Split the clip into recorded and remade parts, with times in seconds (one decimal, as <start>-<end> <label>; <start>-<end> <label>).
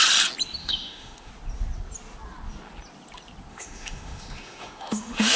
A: 0.0-0.6 recorded; 0.6-1.3 remade; 1.3-3.5 recorded; 3.5-5.4 remade